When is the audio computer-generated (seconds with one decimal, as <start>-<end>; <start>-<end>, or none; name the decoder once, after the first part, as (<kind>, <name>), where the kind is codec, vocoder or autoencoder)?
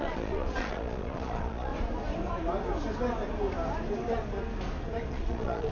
0.0-1.7 (vocoder, Vocos); 5.1-5.7